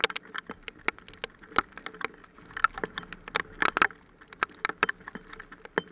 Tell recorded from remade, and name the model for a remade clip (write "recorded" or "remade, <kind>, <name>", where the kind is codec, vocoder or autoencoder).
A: recorded